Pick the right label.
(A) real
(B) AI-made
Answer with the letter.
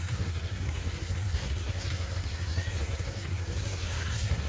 B